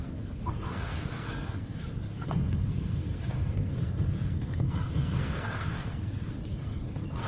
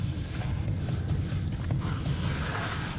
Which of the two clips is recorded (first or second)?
second